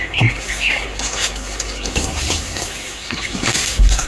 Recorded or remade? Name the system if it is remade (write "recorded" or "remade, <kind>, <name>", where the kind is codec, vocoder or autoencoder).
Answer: remade, codec, SNAC